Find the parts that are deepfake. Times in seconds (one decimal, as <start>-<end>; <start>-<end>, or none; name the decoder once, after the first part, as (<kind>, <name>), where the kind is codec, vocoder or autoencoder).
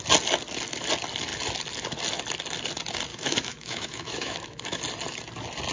3.1-4.8 (autoencoder, DAC-VAE)